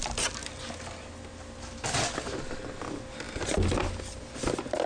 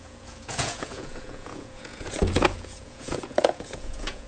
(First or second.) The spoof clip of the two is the second